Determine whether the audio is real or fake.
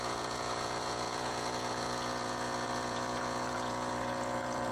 fake